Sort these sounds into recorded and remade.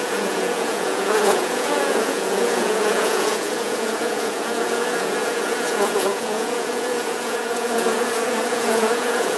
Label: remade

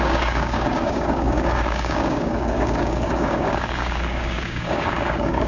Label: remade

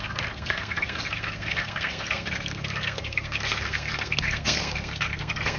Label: remade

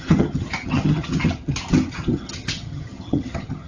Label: remade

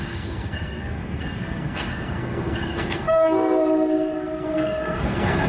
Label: remade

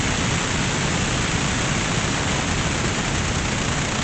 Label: recorded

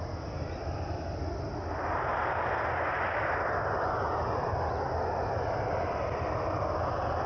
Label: recorded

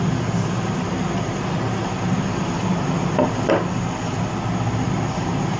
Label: recorded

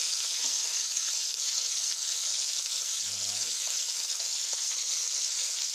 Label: remade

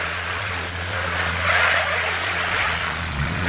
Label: remade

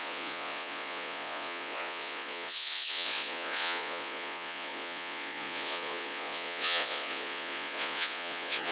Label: remade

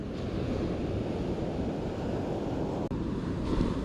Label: recorded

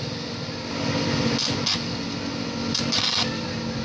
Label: recorded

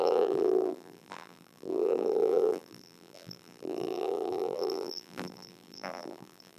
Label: remade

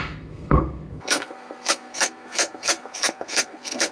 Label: remade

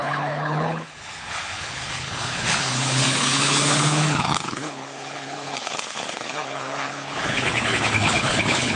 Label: remade